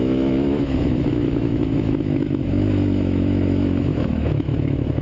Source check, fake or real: fake